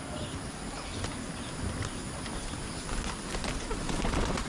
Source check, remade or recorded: recorded